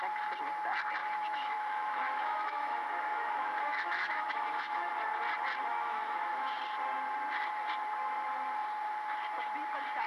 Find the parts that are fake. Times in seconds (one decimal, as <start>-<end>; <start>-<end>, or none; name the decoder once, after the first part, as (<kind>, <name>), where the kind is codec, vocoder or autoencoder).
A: 1.0-4.9 (autoencoder, DAC-VAE); 5.7-6.6